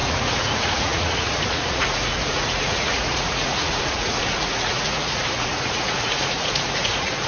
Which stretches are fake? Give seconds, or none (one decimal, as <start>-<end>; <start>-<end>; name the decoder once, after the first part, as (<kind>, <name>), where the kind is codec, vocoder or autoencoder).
0.0-7.3 (vocoder, Vocos)